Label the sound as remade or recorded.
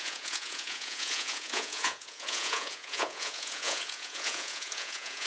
remade